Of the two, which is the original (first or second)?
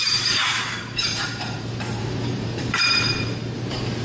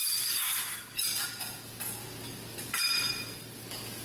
second